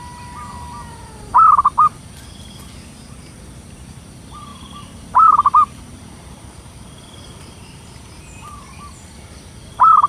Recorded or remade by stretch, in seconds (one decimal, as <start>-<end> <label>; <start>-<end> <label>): 0.0-4.5 recorded; 4.5-8.2 remade; 8.2-10.1 recorded